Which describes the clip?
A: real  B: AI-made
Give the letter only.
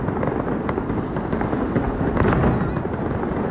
A